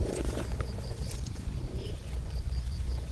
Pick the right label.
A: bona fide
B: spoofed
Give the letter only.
B